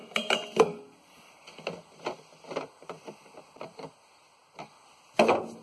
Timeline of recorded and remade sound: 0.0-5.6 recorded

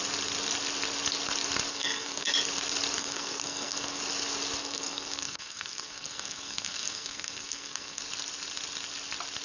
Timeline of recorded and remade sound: 0.0-1.7 recorded; 1.7-2.3 remade; 2.3-3.0 recorded; 3.0-4.0 remade; 4.0-4.6 recorded; 4.6-8.0 remade; 8.0-9.4 recorded

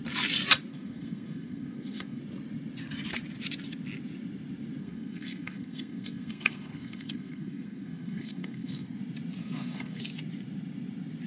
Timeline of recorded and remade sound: 0.0-0.7 recorded; 0.7-2.2 remade; 2.2-4.8 recorded; 4.8-9.0 remade; 9.0-9.4 recorded; 9.4-10.0 remade; 10.0-11.3 recorded

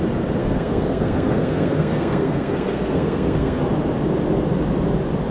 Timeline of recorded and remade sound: 0.0-0.4 recorded; 0.4-3.6 remade; 3.6-5.3 recorded

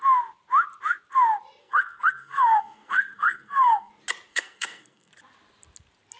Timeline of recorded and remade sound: 0.0-1.6 recorded; 1.6-3.9 remade; 3.9-4.3 recorded; 4.3-5.1 remade; 5.1-6.2 recorded